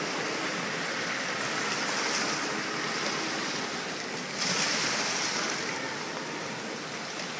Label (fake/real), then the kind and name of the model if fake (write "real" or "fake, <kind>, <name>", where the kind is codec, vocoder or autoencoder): real